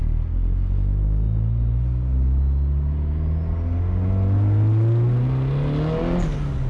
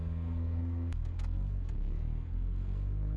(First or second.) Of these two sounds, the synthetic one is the second